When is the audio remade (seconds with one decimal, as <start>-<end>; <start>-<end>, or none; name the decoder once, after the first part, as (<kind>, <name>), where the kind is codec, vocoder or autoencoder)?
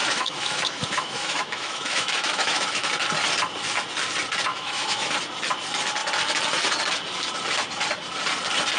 0.0-2.9 (autoencoder, DAC-VAE); 4.5-5.1